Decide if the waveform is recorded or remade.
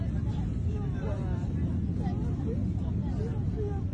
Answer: recorded